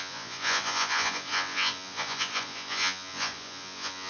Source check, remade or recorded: remade